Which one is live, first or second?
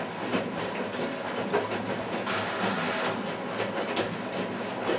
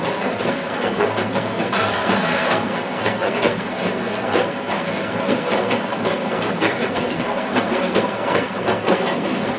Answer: first